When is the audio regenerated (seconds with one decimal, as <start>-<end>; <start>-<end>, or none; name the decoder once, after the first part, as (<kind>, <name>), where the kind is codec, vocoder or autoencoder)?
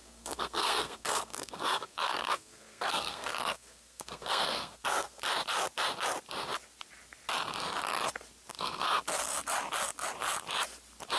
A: 0.0-5.2 (codec, SNAC); 8.5-9.0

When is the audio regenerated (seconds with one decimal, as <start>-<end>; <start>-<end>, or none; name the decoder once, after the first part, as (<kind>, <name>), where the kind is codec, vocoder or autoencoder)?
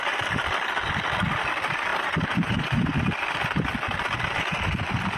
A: 1.9-2.9 (vocoder, BigVGAN v2)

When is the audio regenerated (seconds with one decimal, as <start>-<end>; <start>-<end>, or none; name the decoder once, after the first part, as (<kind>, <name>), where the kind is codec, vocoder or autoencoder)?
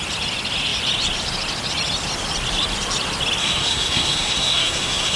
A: 3.4-5.2 (codec, SNAC)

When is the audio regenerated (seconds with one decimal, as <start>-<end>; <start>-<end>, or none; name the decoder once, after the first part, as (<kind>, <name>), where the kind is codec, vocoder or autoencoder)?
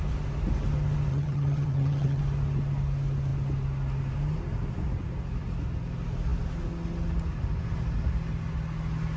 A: 1.1-2.2 (vocoder, HiFi-GAN)